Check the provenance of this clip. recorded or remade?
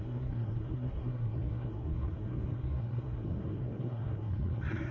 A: remade